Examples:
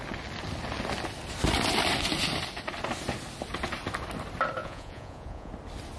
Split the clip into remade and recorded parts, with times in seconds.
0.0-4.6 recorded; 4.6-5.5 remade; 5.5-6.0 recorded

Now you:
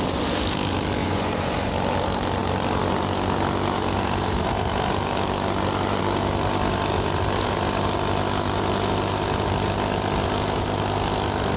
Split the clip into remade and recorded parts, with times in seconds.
0.0-1.0 recorded; 1.0-1.7 remade; 1.7-11.6 recorded